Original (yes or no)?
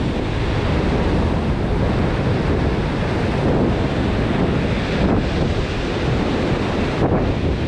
yes